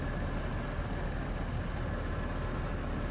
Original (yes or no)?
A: yes